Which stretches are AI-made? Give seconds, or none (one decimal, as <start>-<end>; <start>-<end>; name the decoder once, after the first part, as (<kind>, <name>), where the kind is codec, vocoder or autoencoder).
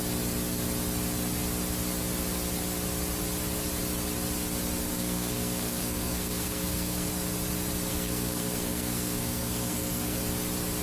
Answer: 4.9-7.1 (codec, SNAC); 7.9-10.2